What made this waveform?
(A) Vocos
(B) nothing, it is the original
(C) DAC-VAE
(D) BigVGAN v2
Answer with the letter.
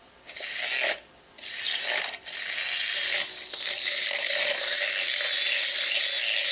B